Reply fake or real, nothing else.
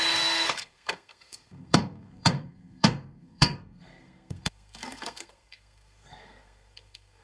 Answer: fake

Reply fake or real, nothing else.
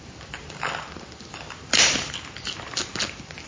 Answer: real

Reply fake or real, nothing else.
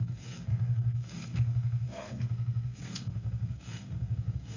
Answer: fake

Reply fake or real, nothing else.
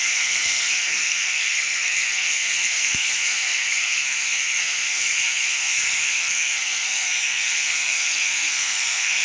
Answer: fake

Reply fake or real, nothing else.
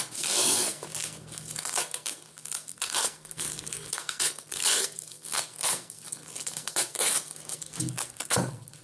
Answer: fake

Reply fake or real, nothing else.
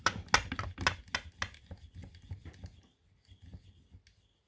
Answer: real